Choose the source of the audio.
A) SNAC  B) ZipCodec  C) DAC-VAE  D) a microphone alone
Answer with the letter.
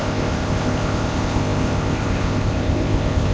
B